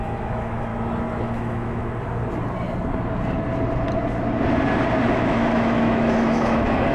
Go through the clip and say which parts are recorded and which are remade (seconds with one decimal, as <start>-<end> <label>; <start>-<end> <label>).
0.0-0.7 remade; 0.7-1.2 recorded; 1.2-1.8 remade; 1.8-5.1 recorded; 5.1-6.9 remade